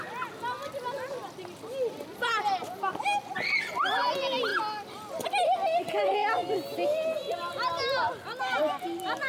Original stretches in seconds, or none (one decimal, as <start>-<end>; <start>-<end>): 0.0-9.3